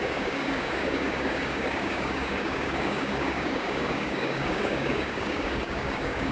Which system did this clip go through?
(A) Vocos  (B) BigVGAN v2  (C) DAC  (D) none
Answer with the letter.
C